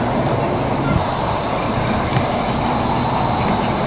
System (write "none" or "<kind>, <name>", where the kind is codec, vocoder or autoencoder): none